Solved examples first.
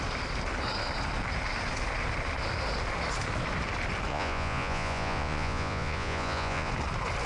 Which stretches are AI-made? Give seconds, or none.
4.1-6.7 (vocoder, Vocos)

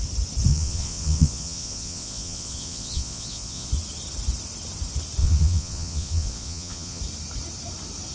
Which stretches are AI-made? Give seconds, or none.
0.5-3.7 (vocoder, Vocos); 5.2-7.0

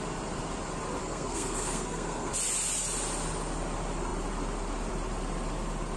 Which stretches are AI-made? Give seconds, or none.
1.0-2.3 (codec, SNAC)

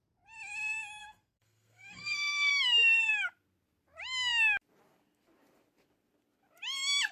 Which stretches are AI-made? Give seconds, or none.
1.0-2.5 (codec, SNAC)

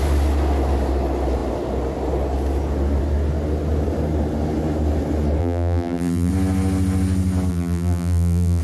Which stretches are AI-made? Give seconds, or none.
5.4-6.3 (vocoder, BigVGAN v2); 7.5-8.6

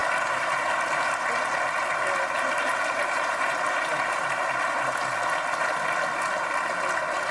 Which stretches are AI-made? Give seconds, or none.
0.0-0.5 (vocoder, BigVGAN v2); 2.7-4.8

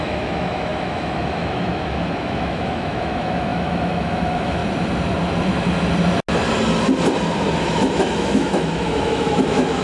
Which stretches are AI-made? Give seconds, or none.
0.0-4.6 (autoencoder, DAC-VAE); 7.6-9.8